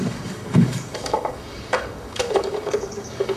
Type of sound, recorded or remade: remade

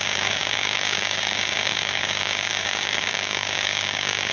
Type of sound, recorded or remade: remade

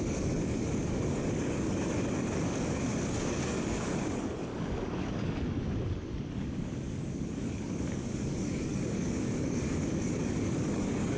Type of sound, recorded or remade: remade